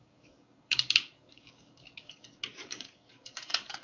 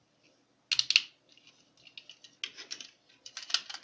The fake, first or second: first